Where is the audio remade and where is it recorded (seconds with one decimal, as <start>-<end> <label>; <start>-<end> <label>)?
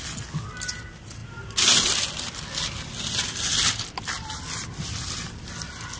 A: 0.0-6.0 recorded